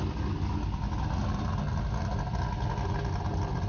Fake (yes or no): no